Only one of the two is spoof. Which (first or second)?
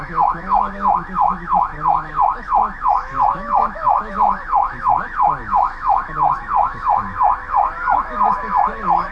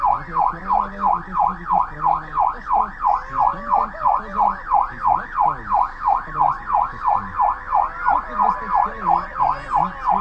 first